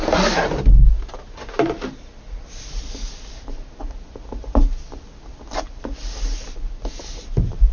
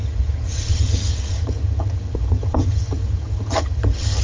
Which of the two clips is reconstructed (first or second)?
second